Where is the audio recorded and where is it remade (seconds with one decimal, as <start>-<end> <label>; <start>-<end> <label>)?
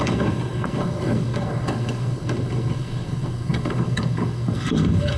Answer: 0.0-5.2 remade